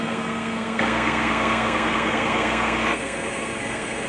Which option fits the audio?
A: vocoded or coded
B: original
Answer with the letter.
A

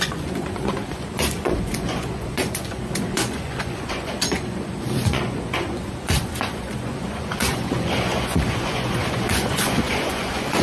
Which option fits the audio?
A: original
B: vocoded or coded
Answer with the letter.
B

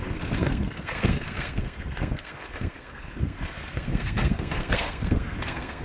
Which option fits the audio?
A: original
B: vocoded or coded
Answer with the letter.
B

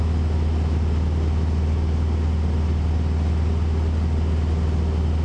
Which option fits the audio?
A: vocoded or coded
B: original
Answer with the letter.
B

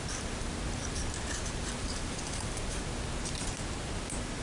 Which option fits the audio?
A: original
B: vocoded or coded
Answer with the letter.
A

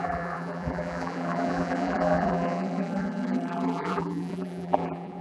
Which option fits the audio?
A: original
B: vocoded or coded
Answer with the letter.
B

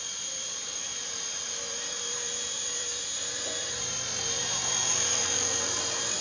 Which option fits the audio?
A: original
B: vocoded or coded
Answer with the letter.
B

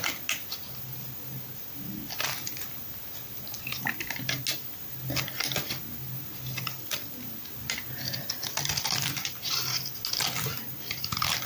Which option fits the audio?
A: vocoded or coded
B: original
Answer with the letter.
B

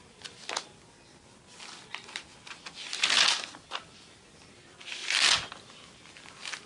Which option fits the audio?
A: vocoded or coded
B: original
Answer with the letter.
B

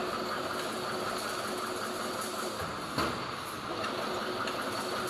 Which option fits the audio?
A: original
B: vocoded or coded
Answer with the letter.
A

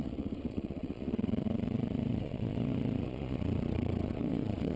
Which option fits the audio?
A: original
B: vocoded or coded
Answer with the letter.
B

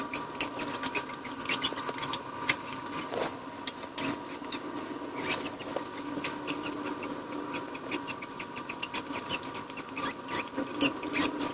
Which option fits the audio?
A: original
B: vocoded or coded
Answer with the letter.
A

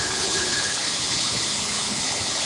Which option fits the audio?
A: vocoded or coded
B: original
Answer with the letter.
A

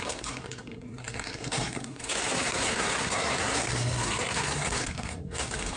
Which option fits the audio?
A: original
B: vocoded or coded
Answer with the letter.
B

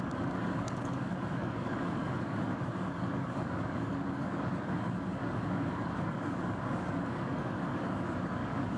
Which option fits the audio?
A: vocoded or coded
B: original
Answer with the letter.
A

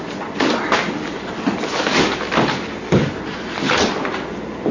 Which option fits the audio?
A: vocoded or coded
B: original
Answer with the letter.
B